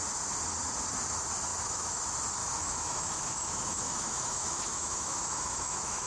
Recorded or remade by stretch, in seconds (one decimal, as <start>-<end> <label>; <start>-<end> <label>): 0.0-1.5 recorded; 1.5-2.0 remade; 2.0-2.4 recorded; 2.4-6.1 remade